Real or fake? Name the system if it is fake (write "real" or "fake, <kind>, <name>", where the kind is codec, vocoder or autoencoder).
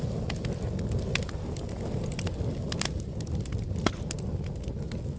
real